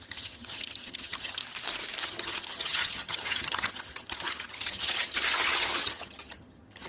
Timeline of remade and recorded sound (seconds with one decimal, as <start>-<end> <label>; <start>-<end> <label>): 0.0-1.4 remade; 1.4-2.0 recorded; 2.0-6.9 remade